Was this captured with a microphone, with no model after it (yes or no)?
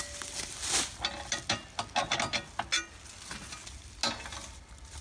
yes